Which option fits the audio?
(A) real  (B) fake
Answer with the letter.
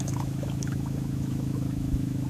B